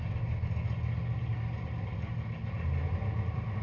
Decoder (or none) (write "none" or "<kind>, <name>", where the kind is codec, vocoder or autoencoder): none